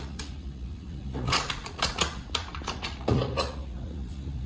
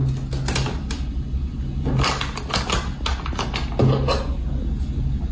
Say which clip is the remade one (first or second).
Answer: first